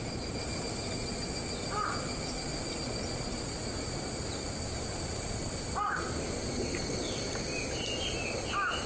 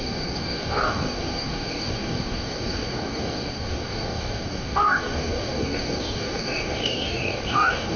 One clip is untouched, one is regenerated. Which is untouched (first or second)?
first